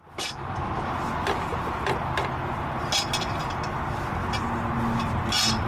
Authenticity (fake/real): real